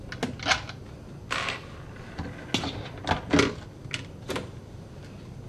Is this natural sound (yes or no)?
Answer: yes